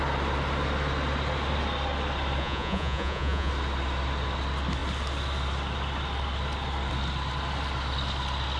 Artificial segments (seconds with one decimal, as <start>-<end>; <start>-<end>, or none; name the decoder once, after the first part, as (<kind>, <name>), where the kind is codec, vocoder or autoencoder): 2.4-3.5 (vocoder, Vocos)